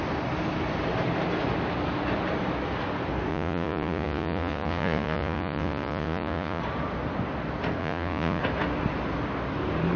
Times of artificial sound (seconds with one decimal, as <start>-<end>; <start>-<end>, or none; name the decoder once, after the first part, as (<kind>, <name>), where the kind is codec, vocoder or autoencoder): 3.3-6.6 (vocoder, Vocos); 7.8-8.4